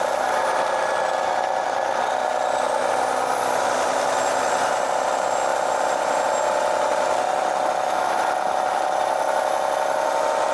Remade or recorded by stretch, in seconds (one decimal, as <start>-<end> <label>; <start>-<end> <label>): 0.0-10.5 recorded